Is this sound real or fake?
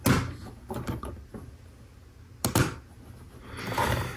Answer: real